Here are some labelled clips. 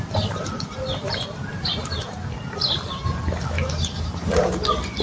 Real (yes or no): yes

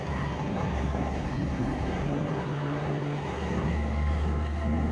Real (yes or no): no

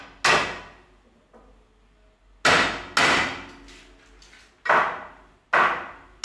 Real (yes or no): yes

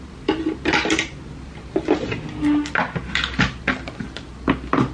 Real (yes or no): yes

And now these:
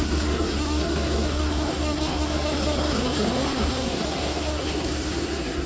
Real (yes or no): no